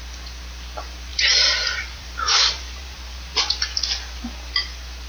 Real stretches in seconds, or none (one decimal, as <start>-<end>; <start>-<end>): 0.0-1.1; 4.2-5.1